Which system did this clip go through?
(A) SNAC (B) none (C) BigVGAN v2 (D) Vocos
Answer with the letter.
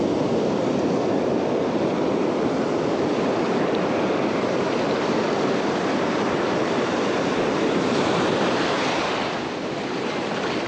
C